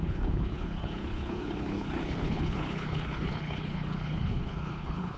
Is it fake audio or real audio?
fake